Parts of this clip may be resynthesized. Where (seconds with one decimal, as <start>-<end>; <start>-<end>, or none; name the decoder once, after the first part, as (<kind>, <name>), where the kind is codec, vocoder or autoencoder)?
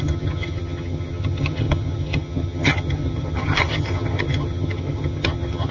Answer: 0.0-5.7 (vocoder, HiFi-GAN)